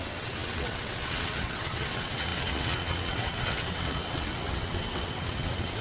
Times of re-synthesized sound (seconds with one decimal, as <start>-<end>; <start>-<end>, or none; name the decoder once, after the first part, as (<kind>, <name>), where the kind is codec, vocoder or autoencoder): 0.0-5.8 (vocoder, WaveNeXt)